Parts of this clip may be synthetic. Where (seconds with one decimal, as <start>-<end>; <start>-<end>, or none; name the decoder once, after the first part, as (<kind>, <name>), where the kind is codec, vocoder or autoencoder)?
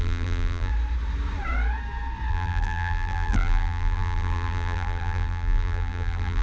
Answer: 0.0-0.7 (vocoder, BigVGAN v2); 2.3-6.4